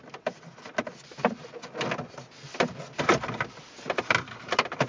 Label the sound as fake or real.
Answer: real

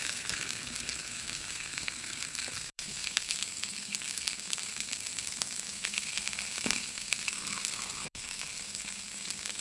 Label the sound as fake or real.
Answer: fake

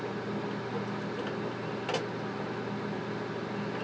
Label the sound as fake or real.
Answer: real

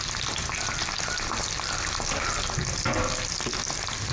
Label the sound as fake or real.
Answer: real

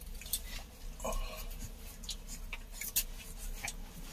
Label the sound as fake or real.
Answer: real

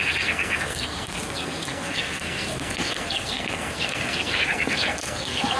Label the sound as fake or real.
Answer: fake